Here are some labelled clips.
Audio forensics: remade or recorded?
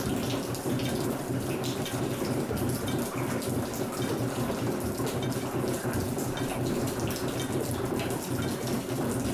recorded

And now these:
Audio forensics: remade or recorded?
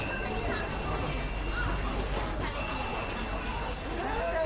recorded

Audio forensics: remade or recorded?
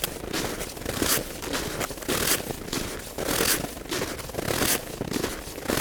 recorded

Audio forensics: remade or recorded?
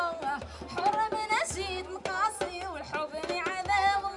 recorded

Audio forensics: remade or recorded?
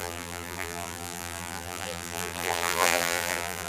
remade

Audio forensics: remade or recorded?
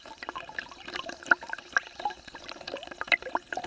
recorded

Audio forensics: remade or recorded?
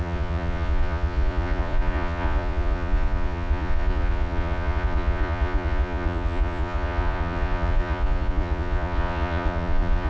remade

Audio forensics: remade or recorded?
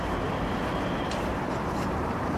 remade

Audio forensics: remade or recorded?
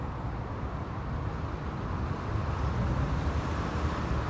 recorded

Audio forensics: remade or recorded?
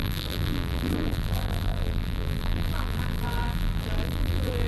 remade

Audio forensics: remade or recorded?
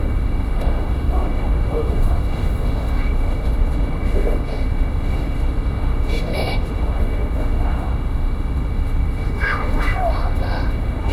remade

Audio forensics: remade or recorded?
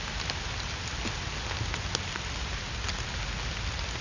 recorded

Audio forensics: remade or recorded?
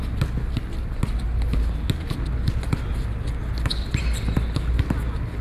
recorded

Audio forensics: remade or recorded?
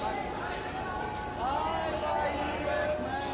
recorded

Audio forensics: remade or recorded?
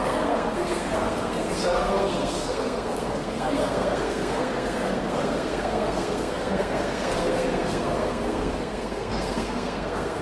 remade